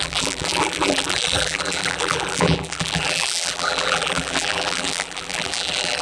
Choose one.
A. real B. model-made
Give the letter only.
B